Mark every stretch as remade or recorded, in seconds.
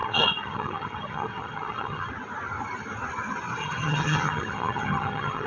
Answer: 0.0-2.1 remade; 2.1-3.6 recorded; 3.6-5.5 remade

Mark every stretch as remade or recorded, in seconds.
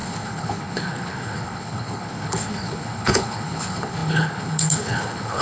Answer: 0.0-5.4 remade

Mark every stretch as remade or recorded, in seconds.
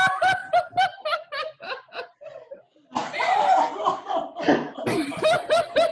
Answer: 0.0-5.9 recorded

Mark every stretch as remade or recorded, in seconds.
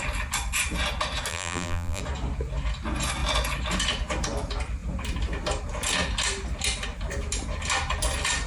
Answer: 0.0-1.3 recorded; 1.3-2.0 remade; 2.0-8.5 recorded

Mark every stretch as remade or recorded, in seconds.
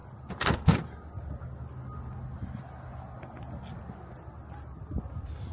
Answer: 0.0-5.5 recorded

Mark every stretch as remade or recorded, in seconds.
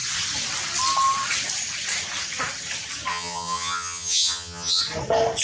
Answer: 0.0-3.1 recorded; 3.1-4.8 remade; 4.8-5.4 recorded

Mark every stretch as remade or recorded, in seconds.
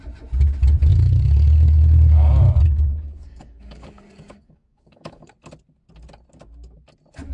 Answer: 0.0-0.9 recorded; 0.9-5.3 remade; 5.3-7.3 recorded